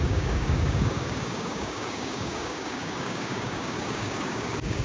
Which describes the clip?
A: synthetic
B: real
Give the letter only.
A